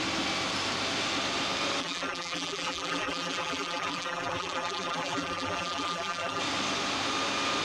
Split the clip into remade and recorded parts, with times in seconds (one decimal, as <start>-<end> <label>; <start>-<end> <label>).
0.0-1.8 recorded; 1.8-6.4 remade; 6.4-7.6 recorded